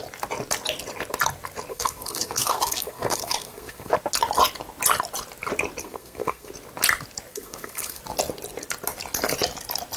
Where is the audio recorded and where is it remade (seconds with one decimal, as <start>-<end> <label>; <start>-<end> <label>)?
0.0-1.7 recorded; 1.7-3.9 remade; 3.9-5.8 recorded; 5.8-6.5 remade; 6.5-7.3 recorded; 7.3-8.0 remade; 8.0-10.0 recorded